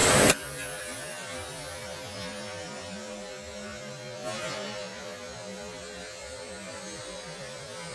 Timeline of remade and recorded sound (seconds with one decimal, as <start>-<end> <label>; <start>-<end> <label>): 0.0-7.9 recorded

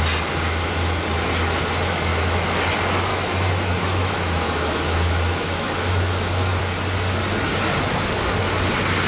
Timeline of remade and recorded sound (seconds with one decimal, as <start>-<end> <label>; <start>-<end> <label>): 0.0-2.1 recorded; 2.1-2.7 remade; 2.7-3.1 recorded; 3.1-6.6 remade; 6.6-9.1 recorded